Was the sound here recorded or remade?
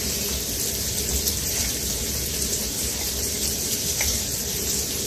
remade